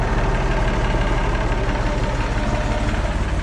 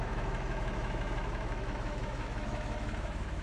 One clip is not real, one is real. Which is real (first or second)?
first